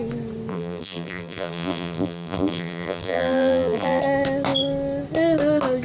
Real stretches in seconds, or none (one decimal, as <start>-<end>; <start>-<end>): 0.0-0.5; 4.0-5.8